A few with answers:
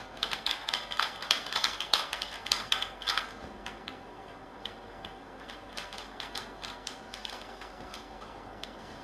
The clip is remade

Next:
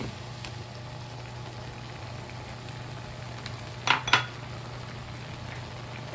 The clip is recorded